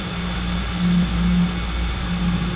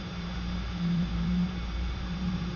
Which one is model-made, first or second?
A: second